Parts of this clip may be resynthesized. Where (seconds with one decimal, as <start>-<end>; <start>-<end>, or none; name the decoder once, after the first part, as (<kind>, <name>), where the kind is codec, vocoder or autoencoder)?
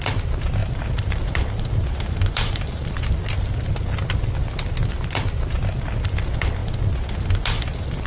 0.6-2.9 (vocoder, BigVGAN v2)